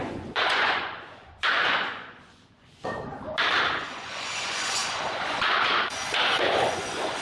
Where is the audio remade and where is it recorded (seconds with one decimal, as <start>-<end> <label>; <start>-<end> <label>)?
0.0-3.1 remade; 3.1-3.7 recorded; 3.7-7.2 remade